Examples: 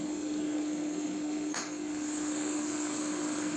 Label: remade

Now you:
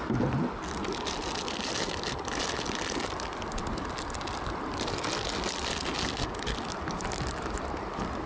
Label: recorded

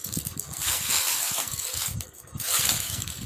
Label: remade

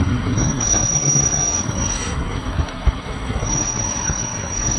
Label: remade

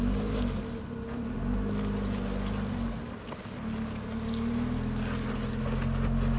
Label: recorded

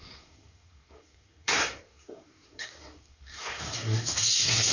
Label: remade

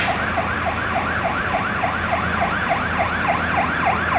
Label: recorded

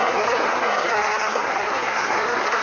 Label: remade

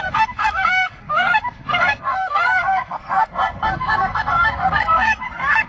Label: remade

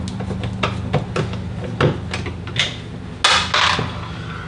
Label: recorded